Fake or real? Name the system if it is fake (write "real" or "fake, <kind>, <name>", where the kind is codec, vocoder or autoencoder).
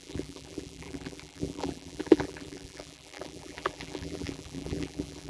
fake, vocoder, BigVGAN v2